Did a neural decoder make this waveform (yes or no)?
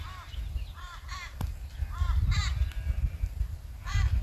no